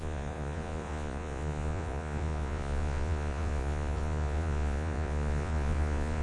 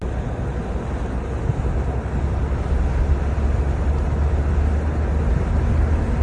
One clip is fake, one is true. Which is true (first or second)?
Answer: second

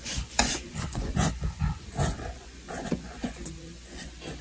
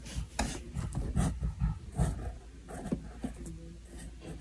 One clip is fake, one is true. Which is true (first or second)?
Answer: second